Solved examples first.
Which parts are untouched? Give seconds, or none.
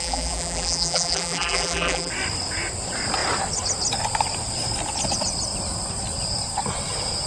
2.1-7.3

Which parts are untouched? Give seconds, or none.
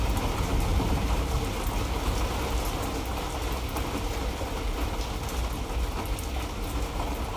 0.0-0.7; 1.4-7.4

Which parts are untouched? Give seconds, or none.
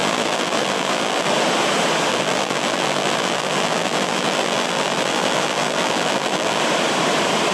1.3-2.1; 6.6-7.5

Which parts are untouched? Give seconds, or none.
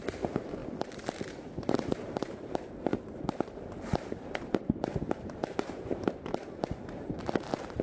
0.6-1.2